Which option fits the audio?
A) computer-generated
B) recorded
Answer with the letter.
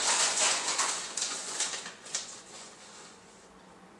A